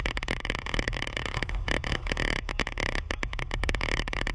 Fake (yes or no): yes